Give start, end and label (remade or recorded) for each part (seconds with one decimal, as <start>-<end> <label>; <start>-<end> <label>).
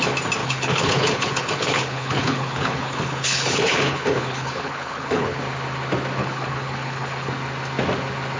0.0-0.4 recorded; 0.4-5.4 remade; 5.4-6.2 recorded; 6.2-7.3 remade; 7.3-8.4 recorded